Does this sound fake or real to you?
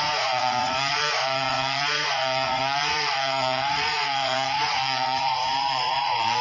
fake